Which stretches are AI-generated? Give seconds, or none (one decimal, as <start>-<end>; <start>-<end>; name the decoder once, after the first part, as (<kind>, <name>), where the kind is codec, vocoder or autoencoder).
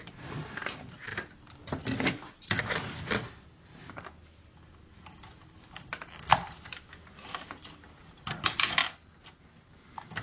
0.0-1.1 (vocoder, BigVGAN v2); 2.4-8.8; 9.7-10.2